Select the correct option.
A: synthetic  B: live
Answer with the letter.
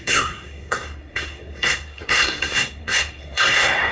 A